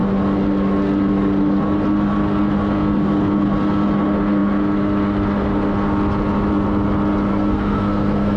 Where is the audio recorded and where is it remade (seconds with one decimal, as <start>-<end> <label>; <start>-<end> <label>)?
0.0-7.3 recorded; 7.3-8.4 remade